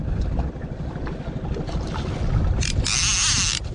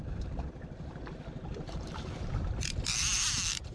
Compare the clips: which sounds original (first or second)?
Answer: first